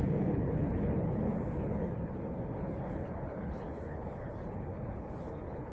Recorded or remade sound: remade